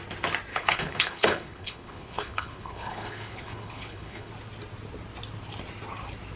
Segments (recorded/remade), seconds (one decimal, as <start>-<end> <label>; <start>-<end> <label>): 0.0-0.5 recorded; 0.5-4.3 remade; 4.3-6.4 recorded